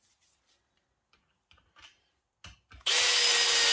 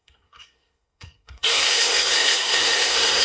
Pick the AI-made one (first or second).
second